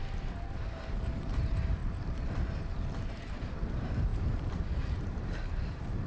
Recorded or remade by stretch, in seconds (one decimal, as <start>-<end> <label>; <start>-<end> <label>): 0.0-1.8 remade; 1.8-3.1 recorded; 3.1-6.1 remade